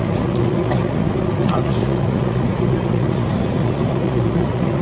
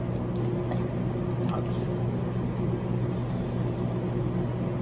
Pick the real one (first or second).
second